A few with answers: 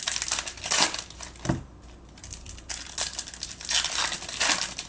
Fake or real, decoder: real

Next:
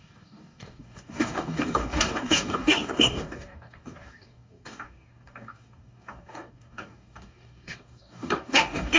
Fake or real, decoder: fake, codec, DAC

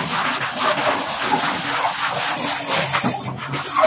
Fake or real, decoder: real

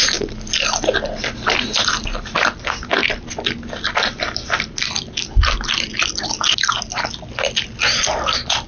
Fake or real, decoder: real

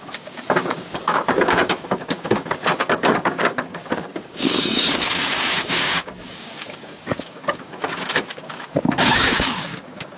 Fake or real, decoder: fake, codec, DAC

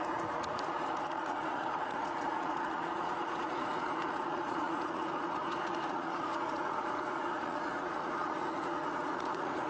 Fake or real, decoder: fake, vocoder, Vocos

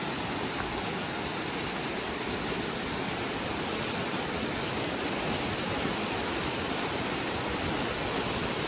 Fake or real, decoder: real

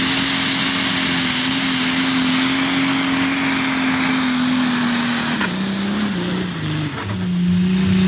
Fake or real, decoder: real